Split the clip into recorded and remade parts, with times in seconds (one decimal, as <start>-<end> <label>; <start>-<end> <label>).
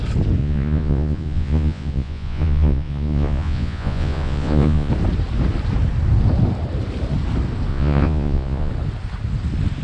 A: 0.0-0.4 recorded; 0.4-4.9 remade; 4.9-7.7 recorded; 7.7-8.7 remade; 8.7-9.8 recorded